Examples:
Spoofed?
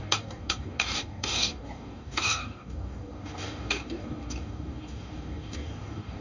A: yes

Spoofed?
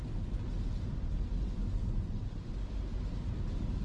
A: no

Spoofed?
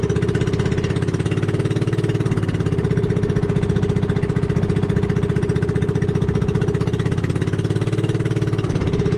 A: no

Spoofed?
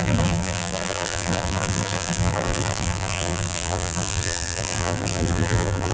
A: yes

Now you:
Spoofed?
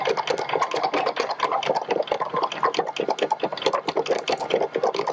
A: no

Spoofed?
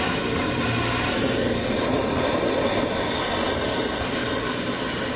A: no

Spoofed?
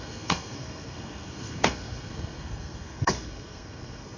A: yes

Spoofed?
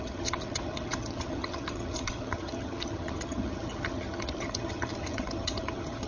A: yes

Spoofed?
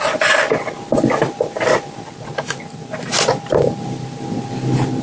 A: no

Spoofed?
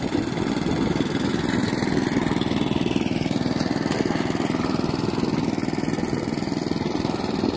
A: no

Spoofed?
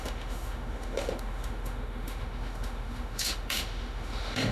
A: yes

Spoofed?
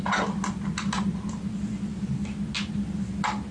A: no